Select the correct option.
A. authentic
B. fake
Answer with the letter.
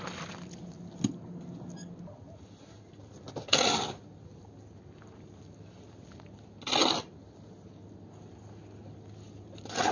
A